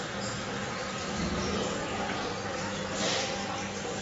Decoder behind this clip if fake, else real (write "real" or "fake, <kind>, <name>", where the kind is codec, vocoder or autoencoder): real